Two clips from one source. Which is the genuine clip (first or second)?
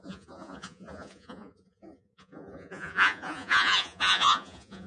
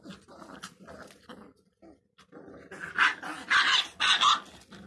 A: second